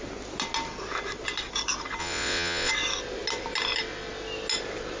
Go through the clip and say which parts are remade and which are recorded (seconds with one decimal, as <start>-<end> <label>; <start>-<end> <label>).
0.0-2.0 recorded; 2.0-2.7 remade; 2.7-5.0 recorded